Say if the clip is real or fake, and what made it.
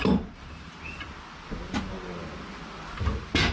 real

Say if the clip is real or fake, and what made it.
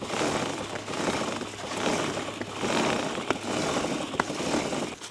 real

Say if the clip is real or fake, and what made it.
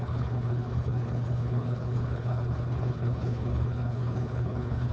fake, codec, HILCodec